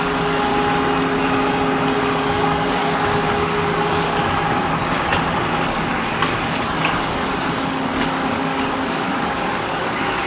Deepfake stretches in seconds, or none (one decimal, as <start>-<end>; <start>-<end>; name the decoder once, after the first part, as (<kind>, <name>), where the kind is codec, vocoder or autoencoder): 0.0-0.5 (codec, DAC); 2.0-4.2; 5.2-10.3